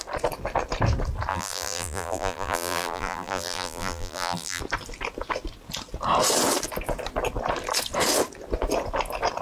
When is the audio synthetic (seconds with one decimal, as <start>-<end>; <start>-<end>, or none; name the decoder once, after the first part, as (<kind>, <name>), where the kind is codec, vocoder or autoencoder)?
1.3-4.6 (vocoder, BigVGAN v2)